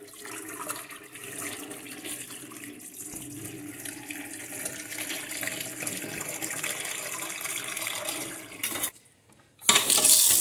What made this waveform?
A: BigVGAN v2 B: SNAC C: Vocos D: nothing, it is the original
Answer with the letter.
D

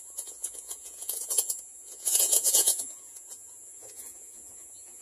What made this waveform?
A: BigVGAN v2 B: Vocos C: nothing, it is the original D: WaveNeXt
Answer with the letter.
B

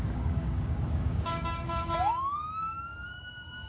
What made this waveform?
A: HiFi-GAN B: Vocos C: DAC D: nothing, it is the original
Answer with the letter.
C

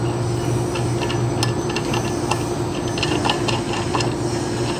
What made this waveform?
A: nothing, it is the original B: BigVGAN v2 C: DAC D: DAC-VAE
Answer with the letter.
A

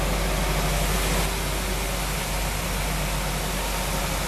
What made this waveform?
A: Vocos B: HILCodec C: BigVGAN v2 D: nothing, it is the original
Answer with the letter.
D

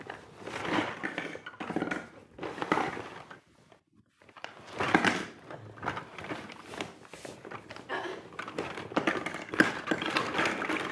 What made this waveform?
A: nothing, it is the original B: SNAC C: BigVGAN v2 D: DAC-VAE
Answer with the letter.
A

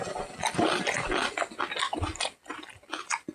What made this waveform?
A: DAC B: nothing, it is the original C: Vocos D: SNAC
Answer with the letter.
B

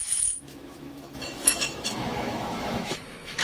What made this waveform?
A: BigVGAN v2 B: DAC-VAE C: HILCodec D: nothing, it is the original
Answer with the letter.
B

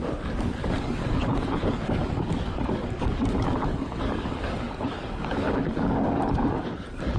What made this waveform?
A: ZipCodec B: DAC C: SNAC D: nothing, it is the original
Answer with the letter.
B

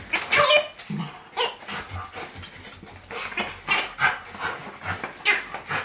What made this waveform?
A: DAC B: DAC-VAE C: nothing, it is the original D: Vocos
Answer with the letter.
C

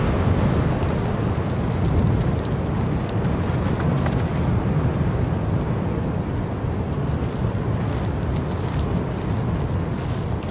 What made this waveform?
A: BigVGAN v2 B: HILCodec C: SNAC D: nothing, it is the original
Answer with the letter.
D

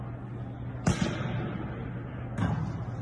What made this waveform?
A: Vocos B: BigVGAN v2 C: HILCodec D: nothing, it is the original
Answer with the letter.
D